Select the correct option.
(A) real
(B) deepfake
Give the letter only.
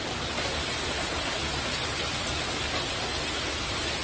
A